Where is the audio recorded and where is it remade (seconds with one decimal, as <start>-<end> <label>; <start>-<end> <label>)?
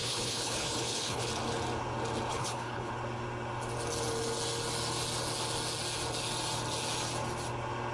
0.0-1.3 remade; 1.3-2.3 recorded; 2.3-2.9 remade; 2.9-7.9 recorded